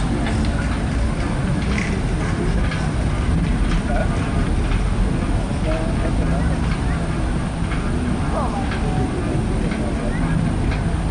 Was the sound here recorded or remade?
recorded